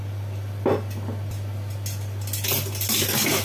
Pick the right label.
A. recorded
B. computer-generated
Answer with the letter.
A